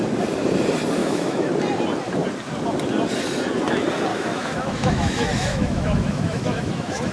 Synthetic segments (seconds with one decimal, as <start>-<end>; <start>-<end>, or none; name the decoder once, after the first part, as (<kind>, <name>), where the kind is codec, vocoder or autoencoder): 1.0-1.5 (autoencoder, DAC-VAE); 4.1-7.1